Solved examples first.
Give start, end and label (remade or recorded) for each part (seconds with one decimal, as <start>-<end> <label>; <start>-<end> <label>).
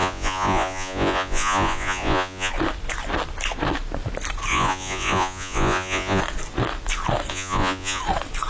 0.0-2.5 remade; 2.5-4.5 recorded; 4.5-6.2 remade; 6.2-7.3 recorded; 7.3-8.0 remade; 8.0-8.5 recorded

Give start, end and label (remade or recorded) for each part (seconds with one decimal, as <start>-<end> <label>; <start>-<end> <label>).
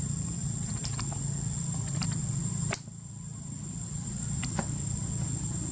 0.0-5.7 recorded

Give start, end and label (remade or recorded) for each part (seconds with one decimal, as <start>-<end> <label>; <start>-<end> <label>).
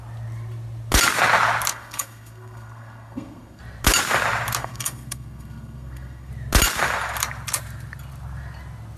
0.0-1.7 recorded; 1.7-3.6 remade; 3.6-4.6 recorded; 4.6-6.3 remade; 6.3-9.0 recorded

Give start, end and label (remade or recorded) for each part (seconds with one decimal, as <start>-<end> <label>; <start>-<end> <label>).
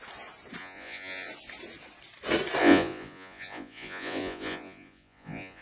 0.0-0.6 recorded; 0.6-1.3 remade; 1.3-2.6 recorded; 2.6-5.6 remade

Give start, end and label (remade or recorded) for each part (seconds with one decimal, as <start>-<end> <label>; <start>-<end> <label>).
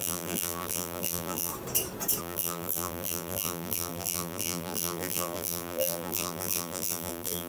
0.0-1.5 remade; 1.5-2.2 recorded; 2.2-7.5 remade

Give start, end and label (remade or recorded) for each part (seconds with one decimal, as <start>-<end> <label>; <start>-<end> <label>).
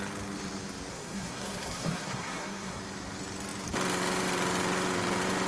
0.0-0.9 recorded; 0.9-2.8 remade; 2.8-5.5 recorded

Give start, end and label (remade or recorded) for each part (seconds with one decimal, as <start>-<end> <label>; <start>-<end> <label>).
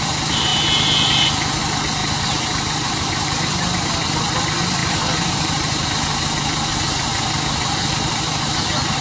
0.0-2.0 recorded; 2.0-3.8 remade; 3.8-4.8 recorded; 4.8-9.0 remade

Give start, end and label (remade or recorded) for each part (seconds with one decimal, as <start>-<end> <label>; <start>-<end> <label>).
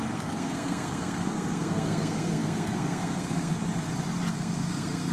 0.0-3.6 remade; 3.6-4.3 recorded; 4.3-5.1 remade